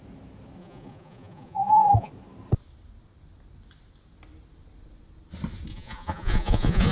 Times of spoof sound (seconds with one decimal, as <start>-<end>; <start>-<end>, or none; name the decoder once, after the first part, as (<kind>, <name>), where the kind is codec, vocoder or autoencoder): 0.6-2.1 (vocoder, Vocos); 5.7-6.9